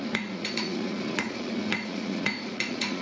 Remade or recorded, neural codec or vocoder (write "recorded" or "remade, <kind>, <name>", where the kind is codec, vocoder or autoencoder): remade, vocoder, Vocos